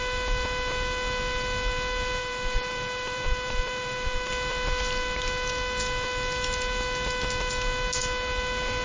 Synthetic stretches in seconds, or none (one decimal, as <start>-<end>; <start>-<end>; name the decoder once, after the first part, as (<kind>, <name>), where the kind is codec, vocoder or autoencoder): 2.2-4.3 (vocoder, BigVGAN v2)